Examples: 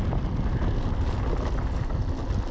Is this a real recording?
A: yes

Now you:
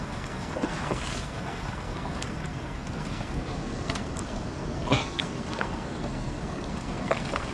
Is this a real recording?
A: no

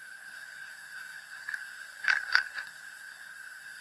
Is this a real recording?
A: no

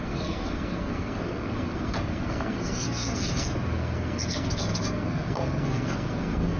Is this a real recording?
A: no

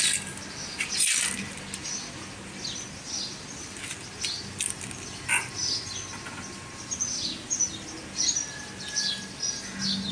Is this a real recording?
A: yes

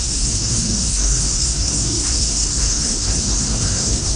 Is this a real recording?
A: no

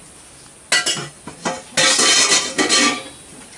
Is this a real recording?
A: yes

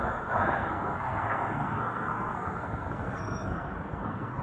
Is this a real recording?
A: no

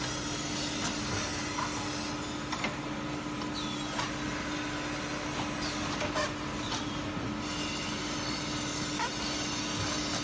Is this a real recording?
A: yes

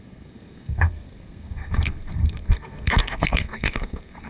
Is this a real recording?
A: no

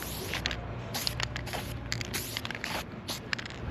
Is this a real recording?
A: yes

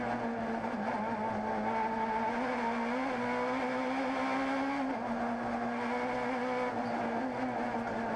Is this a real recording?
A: yes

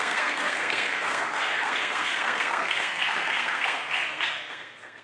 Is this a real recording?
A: no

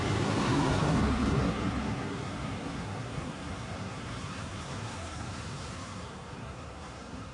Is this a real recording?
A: no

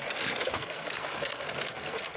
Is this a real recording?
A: no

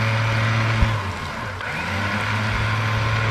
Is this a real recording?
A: yes